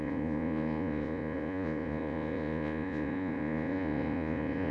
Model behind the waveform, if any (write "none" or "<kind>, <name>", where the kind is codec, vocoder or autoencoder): vocoder, Vocos